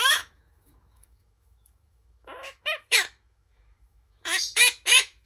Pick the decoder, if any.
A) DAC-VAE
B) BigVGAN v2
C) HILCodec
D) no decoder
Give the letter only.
A